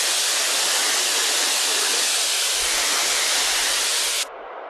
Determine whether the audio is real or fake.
real